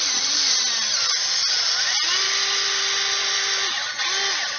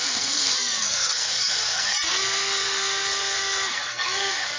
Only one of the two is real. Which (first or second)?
first